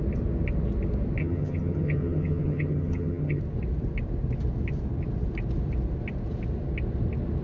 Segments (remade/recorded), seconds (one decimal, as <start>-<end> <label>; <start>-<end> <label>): 0.0-1.2 recorded; 1.2-3.4 remade; 3.4-7.4 recorded